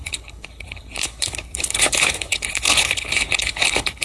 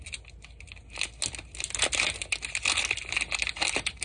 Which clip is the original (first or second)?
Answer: second